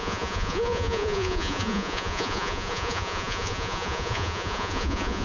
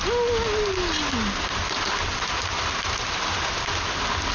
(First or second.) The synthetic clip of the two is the first